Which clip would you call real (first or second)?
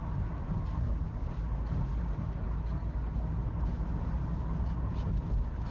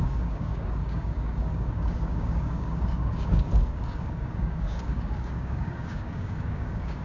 first